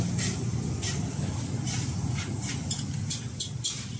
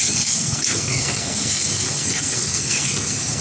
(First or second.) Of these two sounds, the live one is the first